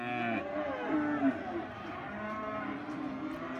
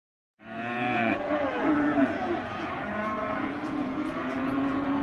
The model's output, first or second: second